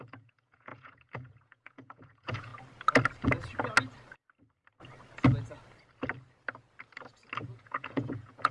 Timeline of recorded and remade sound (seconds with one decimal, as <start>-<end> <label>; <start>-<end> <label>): 0.0-2.5 remade; 2.5-7.4 recorded; 7.4-8.5 remade